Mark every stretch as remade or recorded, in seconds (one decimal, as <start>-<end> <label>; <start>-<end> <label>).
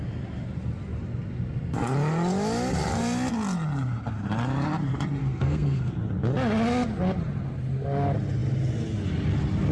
0.0-5.2 recorded; 5.2-5.9 remade; 5.9-9.7 recorded